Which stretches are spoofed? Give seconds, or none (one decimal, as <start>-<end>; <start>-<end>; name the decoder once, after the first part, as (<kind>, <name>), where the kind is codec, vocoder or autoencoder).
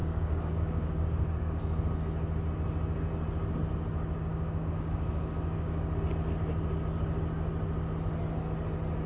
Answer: 0.0-1.6 (codec, DAC); 4.3-5.9